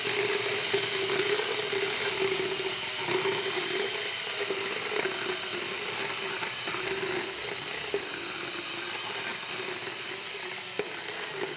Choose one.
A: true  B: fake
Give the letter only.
A